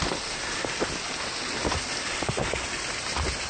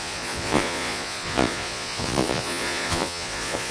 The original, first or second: first